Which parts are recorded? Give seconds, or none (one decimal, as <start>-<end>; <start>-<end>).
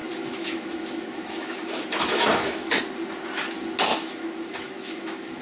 2.8-3.9